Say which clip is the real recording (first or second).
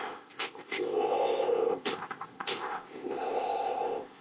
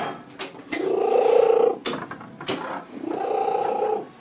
second